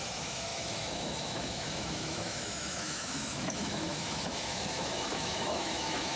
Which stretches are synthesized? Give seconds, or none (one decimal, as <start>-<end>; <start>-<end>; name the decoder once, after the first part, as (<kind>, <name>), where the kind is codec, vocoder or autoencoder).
0.0-6.2 (autoencoder, DAC-VAE)